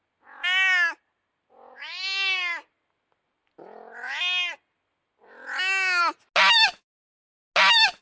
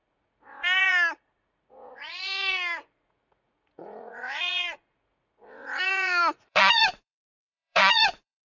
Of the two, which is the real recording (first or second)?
first